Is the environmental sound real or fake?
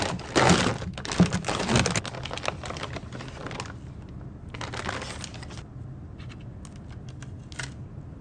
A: real